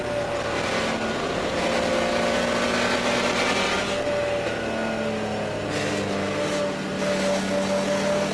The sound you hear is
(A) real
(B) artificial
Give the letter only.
A